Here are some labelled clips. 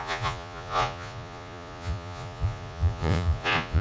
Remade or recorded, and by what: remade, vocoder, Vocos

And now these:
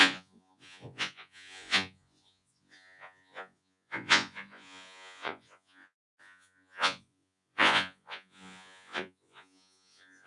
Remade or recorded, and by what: remade, vocoder, Vocos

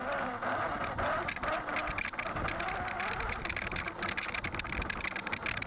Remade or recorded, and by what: recorded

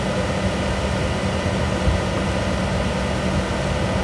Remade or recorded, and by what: recorded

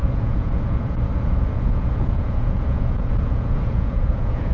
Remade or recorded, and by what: remade, vocoder, Vocos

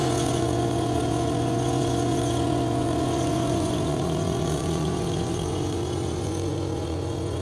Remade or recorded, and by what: remade, vocoder, Vocos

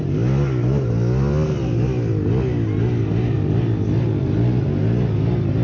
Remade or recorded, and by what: recorded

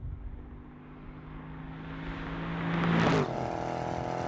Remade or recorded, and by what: recorded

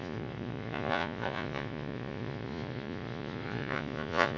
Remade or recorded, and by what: remade, vocoder, Vocos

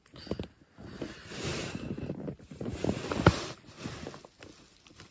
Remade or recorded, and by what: recorded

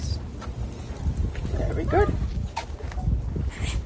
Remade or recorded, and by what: recorded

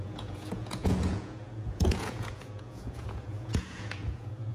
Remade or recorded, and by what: remade, vocoder, Vocos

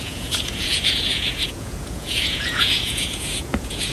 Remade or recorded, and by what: remade, vocoder, Vocos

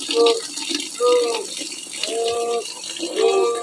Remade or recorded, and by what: recorded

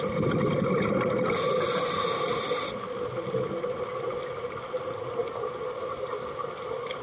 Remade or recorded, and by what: recorded